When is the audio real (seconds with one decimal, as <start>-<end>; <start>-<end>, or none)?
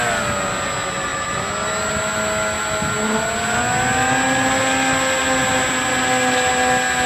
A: 0.0-7.1